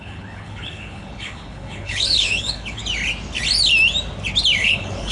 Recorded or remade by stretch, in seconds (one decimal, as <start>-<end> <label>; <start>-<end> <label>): 0.0-2.8 remade; 2.8-4.6 recorded; 4.6-5.1 remade